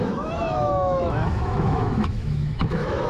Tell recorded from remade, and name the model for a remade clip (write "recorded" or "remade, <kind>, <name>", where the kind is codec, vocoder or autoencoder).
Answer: remade, autoencoder, DAC-VAE